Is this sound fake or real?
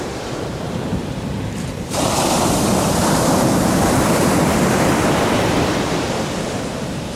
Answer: fake